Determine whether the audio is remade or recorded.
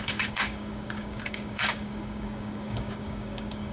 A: remade